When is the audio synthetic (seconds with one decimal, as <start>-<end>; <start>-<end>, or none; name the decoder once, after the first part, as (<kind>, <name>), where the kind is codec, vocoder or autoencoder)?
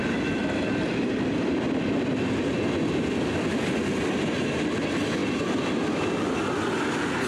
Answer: 0.4-3.8 (vocoder, BigVGAN v2)